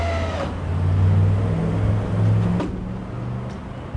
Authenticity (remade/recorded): recorded